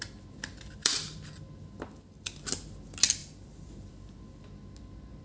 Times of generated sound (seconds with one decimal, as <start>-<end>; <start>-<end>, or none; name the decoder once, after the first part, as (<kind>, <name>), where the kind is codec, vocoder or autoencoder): 0.8-1.3 (vocoder, BigVGAN v2); 3.2-3.9